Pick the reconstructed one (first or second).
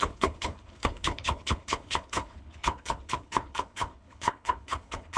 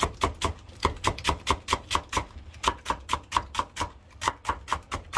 first